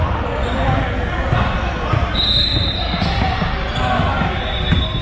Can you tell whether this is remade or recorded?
recorded